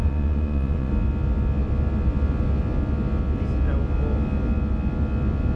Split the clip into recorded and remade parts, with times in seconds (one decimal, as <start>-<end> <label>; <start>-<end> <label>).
0.0-0.9 remade; 0.9-5.6 recorded